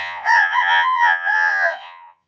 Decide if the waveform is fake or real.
fake